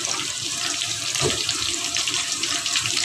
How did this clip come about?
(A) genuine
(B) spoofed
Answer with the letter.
B